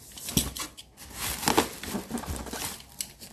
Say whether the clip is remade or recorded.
recorded